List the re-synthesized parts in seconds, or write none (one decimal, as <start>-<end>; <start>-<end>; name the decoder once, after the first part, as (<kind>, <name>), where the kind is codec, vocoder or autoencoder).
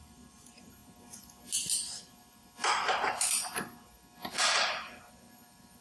0.0-0.8 (vocoder, BigVGAN v2); 4.3-5.8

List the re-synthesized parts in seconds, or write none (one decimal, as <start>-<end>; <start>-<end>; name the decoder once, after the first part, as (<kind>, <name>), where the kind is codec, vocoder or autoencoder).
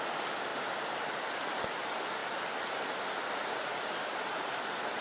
3.7-4.5 (vocoder, BigVGAN v2)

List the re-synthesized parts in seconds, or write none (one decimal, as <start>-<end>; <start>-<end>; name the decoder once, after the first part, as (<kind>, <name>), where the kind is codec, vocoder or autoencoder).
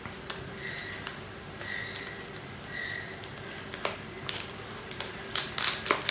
none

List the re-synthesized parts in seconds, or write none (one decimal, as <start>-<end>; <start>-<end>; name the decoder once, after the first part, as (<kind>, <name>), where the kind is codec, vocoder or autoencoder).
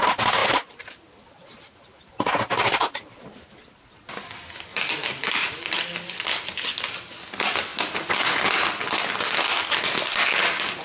0.4-3.6 (vocoder, BigVGAN v2); 4.7-5.8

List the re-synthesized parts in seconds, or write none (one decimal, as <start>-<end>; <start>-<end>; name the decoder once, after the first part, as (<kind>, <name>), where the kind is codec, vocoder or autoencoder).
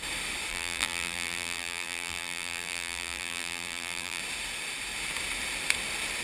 0.5-4.2 (vocoder, BigVGAN v2)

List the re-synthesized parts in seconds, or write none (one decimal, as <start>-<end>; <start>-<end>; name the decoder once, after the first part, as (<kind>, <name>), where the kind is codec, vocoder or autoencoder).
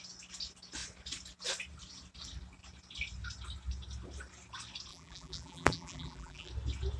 4.9-6.5 (vocoder, BigVGAN v2)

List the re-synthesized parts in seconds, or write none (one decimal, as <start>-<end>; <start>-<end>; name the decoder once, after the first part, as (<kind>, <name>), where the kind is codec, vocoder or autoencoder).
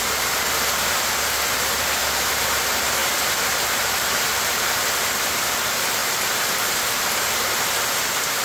0.0-2.0 (vocoder, BigVGAN v2); 2.6-3.0; 3.8-8.4